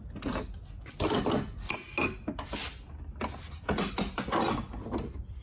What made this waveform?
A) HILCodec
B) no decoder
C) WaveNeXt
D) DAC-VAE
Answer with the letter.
B